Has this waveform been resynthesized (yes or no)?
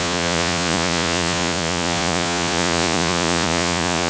yes